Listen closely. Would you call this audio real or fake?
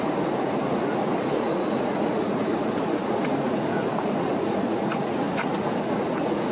fake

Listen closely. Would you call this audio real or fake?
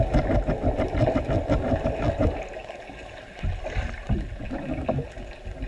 real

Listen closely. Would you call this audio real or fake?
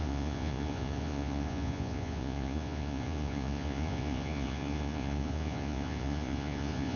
fake